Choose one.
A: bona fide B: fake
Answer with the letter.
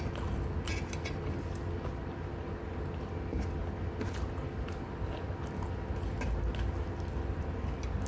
A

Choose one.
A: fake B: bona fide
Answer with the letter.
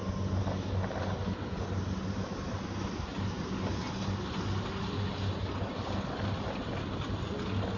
B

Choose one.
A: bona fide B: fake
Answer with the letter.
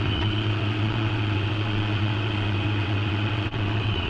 B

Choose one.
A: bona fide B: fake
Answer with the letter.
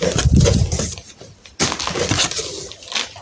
A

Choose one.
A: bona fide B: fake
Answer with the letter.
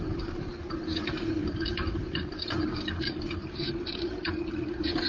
B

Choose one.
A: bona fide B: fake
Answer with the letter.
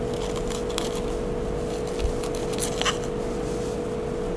A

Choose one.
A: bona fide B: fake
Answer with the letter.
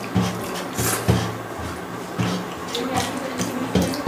A